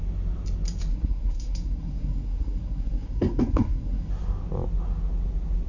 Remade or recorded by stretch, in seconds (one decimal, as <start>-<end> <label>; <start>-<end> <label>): 0.0-0.9 recorded; 0.9-4.1 remade; 4.1-5.7 recorded